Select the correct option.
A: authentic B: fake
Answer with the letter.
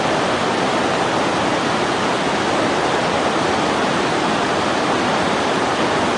A